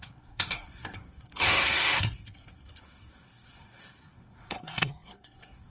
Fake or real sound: fake